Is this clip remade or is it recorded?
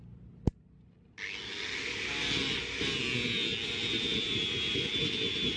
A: recorded